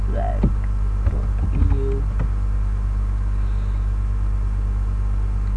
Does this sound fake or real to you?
real